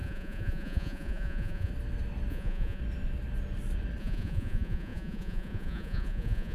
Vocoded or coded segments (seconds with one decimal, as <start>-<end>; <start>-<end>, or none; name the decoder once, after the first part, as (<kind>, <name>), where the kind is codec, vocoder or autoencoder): 0.0-1.7 (vocoder, Vocos); 2.3-2.8; 4.0-6.5